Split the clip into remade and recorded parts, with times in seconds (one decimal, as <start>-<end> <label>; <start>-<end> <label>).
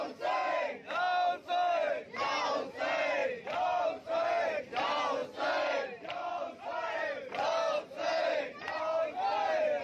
0.0-3.2 recorded; 3.2-4.6 remade; 4.6-5.2 recorded; 5.2-8.8 remade; 8.8-9.8 recorded